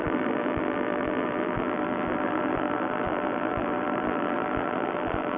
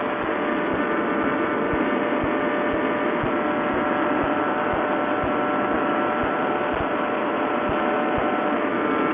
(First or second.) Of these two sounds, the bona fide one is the second